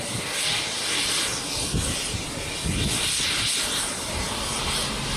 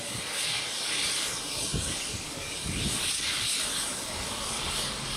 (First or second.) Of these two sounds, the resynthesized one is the second